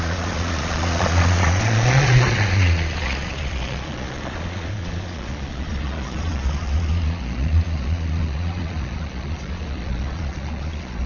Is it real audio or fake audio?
fake